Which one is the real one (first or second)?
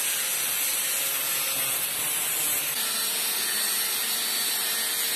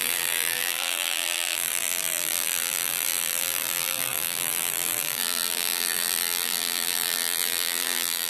first